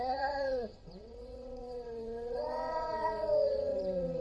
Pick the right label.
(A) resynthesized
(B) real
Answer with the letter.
A